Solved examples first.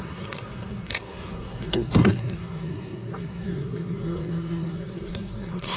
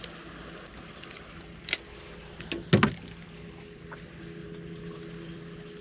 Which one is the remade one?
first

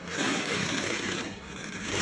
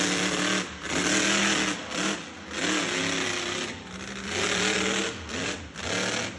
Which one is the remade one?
first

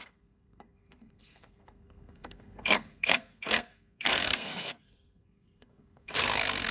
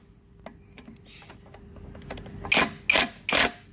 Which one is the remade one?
first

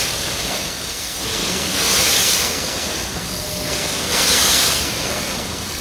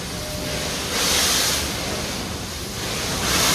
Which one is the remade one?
first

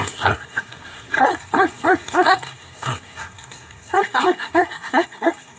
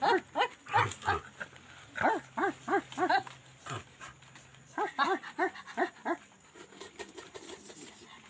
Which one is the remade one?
first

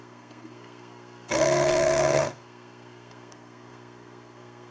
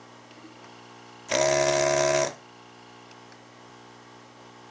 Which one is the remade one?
first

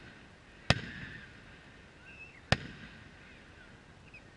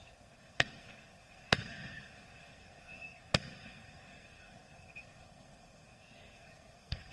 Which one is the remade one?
second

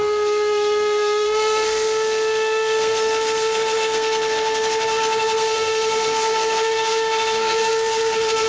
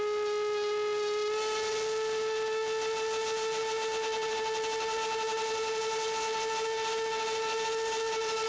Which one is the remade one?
first